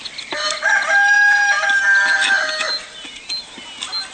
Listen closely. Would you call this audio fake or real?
real